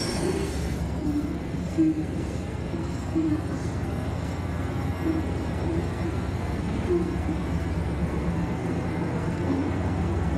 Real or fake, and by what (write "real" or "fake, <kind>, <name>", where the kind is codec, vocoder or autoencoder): fake, codec, SNAC